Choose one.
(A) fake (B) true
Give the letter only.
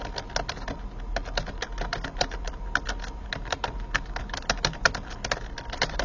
B